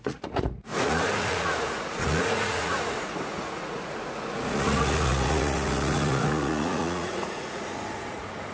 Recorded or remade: remade